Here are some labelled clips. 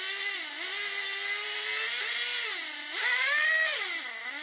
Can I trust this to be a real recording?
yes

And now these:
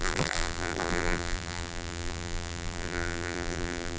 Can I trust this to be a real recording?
no